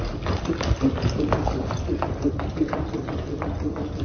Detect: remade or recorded recorded